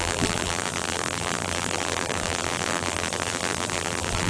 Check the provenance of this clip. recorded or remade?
remade